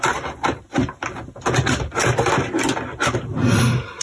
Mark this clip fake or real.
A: real